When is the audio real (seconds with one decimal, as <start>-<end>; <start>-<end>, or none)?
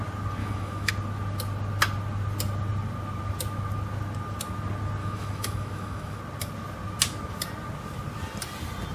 0.0-0.4; 0.9-5.0; 6.2-8.9